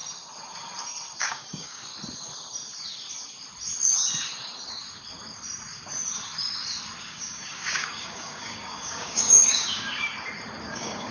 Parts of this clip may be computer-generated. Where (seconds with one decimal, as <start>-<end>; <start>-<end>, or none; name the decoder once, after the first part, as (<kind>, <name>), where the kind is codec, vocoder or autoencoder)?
1.2-1.9 (codec, DAC); 7.0-10.1; 10.6-11.1